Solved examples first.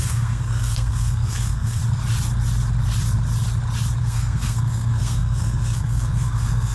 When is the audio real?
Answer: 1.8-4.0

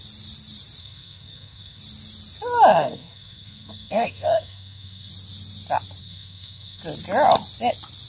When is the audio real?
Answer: 0.0-0.8; 1.8-2.7; 5.1-6.0; 6.8-8.1

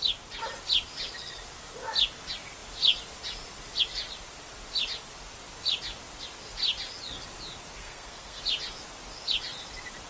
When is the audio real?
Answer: 0.0-7.8; 8.4-10.1

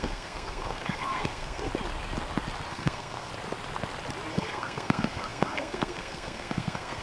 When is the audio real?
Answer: 1.7-2.7; 3.3-4.3

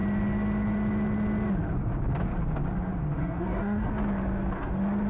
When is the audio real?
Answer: 0.0-3.2; 3.9-5.1

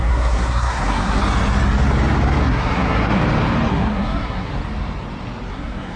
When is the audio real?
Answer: 1.2-2.4; 3.2-3.7; 4.5-5.5

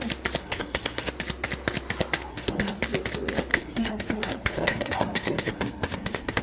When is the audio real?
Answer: 0.0-0.4; 1.1-2.3; 2.8-3.5

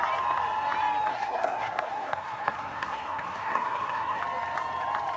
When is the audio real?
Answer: 0.0-1.1; 4.2-5.2